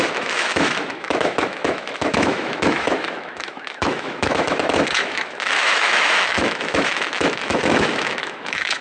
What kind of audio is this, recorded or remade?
remade